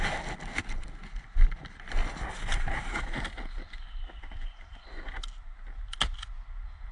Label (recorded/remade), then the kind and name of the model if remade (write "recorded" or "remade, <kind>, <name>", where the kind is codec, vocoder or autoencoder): recorded